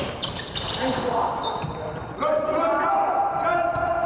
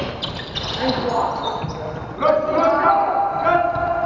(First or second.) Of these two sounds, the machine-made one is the first